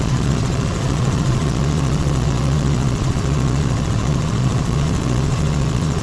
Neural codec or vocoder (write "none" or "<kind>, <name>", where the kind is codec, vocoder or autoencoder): vocoder, Vocos